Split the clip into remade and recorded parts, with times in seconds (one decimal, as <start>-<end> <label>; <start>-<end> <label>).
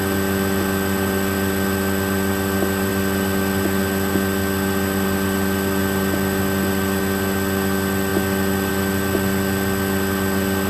0.0-10.7 recorded